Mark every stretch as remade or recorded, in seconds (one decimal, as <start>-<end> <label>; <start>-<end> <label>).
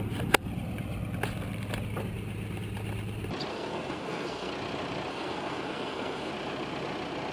0.0-3.5 recorded; 3.5-4.5 remade; 4.5-5.1 recorded; 5.1-6.3 remade; 6.3-7.3 recorded